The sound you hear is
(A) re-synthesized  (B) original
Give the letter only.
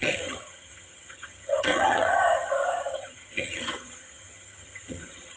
A